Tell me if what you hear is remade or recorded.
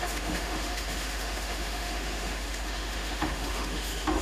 remade